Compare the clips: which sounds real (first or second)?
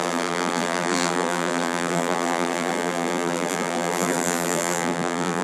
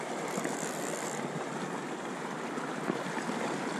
second